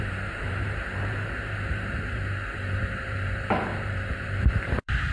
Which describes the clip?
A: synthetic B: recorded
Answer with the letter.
A